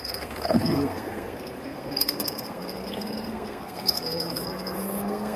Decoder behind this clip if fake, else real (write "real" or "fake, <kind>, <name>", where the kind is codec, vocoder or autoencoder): fake, codec, SNAC